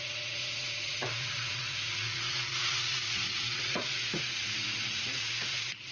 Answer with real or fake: fake